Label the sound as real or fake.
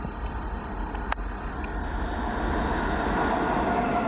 real